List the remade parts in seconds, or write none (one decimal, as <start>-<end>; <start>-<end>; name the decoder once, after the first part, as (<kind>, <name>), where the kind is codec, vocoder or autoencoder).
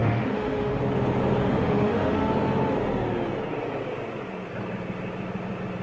0.0-0.8 (autoencoder, DAC-VAE); 1.4-2.3